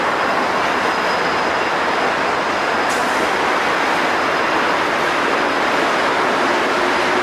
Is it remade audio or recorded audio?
recorded